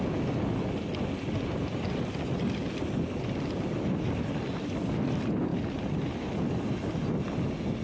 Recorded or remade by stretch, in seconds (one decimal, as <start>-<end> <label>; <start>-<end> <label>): 0.0-1.6 recorded; 1.6-2.6 remade; 2.6-7.8 recorded